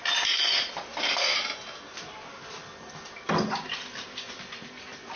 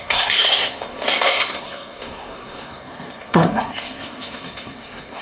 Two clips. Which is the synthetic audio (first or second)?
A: second